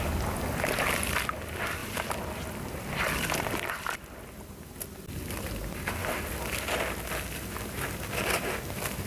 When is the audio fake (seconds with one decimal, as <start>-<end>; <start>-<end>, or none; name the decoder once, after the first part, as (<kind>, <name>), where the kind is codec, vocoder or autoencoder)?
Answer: 1.8-3.9 (vocoder, BigVGAN v2)

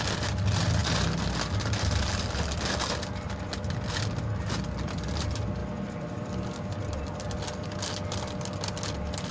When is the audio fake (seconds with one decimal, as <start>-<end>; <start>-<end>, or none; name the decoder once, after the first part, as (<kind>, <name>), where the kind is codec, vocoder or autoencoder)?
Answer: 5.6-6.3 (vocoder, BigVGAN v2)

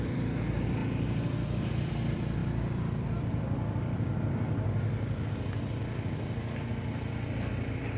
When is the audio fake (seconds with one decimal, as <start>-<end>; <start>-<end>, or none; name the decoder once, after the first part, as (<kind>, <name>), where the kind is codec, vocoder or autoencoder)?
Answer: 0.0-0.8 (vocoder, BigVGAN v2); 1.8-8.0

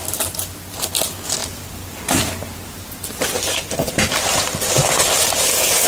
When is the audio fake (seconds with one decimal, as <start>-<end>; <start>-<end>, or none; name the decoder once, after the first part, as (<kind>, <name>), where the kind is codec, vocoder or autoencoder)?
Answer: 1.4-4.6 (vocoder, BigVGAN v2)

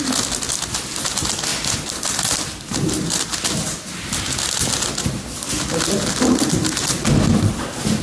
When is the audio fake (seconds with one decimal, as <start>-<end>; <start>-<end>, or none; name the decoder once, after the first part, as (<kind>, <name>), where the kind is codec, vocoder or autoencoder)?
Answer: none

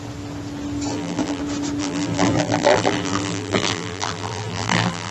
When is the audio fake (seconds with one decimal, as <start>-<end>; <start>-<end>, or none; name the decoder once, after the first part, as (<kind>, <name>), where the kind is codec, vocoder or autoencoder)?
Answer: 0.9-1.4 (vocoder, BigVGAN v2); 1.8-5.1

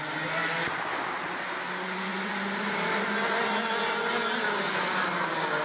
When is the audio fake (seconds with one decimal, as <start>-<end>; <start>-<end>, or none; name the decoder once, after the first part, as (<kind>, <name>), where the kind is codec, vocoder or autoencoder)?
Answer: 2.1-4.7 (vocoder, BigVGAN v2)